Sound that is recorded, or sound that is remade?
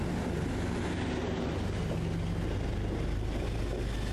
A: recorded